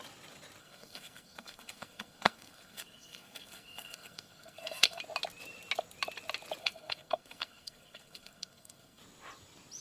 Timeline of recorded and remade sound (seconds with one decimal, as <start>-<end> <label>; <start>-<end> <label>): 0.0-0.6 recorded; 0.6-5.0 remade; 5.0-6.6 recorded; 6.6-9.0 remade; 9.0-9.8 recorded

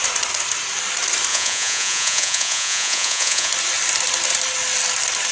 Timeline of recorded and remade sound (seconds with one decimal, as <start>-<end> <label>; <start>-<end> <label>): 0.0-1.3 recorded; 1.3-3.5 remade; 3.5-5.3 recorded

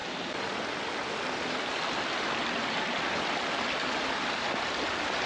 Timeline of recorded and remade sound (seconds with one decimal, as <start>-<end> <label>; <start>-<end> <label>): 0.0-5.3 recorded